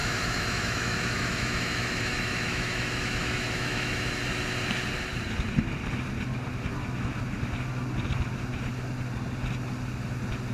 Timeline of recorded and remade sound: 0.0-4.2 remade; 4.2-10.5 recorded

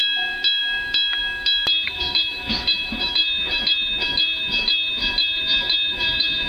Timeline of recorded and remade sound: 0.0-6.5 remade

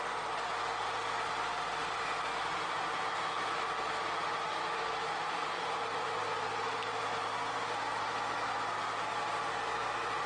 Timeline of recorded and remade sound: 0.0-10.3 recorded

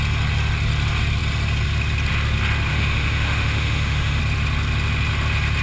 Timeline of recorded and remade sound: 0.0-2.7 recorded; 2.7-4.2 remade; 4.2-5.6 recorded

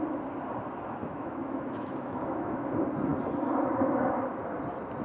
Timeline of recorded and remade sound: 0.0-1.0 recorded; 1.0-2.7 remade; 2.7-5.0 recorded